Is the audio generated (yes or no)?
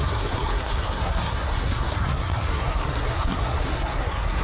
yes